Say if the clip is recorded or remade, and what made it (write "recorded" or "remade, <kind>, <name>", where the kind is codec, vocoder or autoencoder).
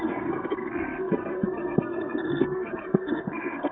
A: remade, codec, SNAC